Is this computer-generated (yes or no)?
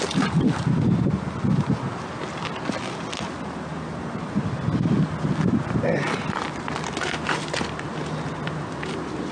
no